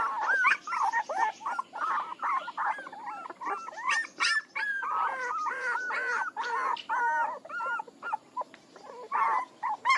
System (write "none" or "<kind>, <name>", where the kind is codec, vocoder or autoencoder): none